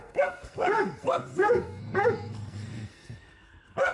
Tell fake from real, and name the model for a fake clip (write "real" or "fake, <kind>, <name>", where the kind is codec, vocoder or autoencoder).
fake, codec, SNAC